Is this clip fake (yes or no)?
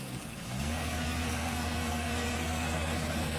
yes